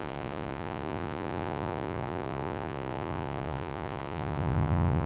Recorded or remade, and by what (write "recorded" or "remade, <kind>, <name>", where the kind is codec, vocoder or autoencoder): remade, vocoder, Vocos